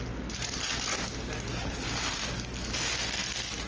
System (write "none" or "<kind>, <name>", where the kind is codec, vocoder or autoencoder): none